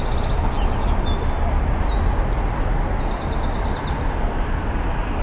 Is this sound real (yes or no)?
yes